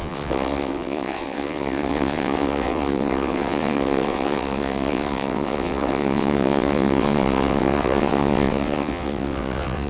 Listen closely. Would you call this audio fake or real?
fake